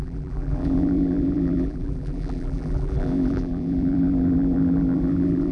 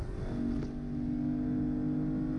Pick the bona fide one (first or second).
second